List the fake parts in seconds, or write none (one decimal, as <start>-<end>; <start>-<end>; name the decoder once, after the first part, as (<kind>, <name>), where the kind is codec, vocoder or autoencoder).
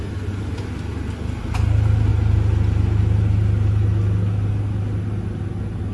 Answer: none